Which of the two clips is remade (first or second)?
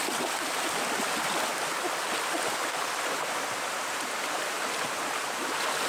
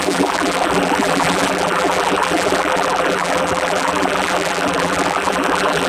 second